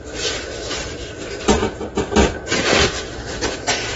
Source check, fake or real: fake